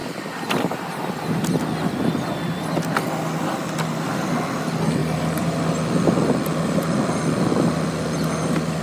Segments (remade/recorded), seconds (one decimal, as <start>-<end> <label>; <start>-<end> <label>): 0.0-1.3 remade; 1.3-5.0 recorded; 5.0-5.6 remade; 5.6-8.8 recorded